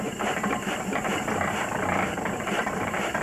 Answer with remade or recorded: remade